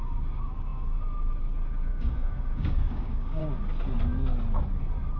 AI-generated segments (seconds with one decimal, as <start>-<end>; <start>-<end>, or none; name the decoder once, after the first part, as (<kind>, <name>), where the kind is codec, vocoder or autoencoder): 1.9-3.4 (codec, DAC)